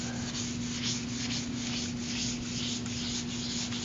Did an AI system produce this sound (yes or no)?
no